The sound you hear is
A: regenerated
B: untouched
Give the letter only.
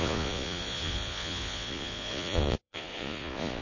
A